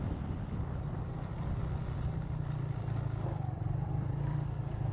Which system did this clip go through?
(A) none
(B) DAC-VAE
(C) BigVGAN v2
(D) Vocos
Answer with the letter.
C